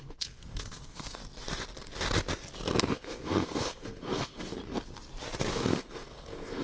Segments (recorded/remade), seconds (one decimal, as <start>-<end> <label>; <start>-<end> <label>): 0.0-1.2 remade; 1.2-2.9 recorded; 2.9-4.6 remade; 4.6-5.5 recorded; 5.5-6.6 remade